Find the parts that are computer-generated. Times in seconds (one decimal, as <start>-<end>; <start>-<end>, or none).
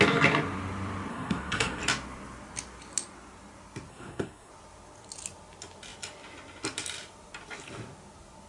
1.1-1.8; 3.9-4.5